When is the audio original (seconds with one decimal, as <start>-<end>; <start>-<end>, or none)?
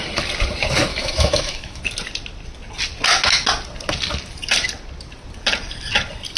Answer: 0.0-0.9; 1.8-6.4